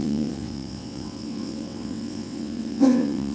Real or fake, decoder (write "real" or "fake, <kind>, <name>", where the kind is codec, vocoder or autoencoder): fake, vocoder, WaveNeXt